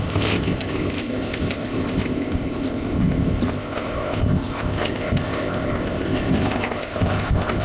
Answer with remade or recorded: remade